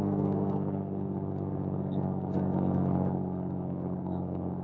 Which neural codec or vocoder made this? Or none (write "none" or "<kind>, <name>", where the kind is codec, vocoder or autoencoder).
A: codec, SNAC